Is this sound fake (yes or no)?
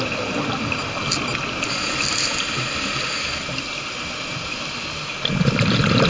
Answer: no